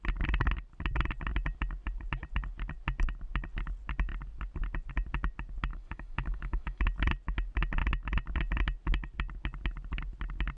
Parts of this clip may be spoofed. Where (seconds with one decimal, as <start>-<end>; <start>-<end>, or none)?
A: 5.7-6.8